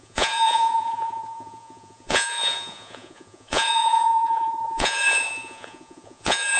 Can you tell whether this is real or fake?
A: fake